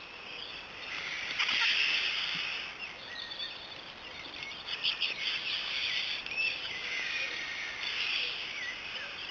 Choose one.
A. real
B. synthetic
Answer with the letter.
B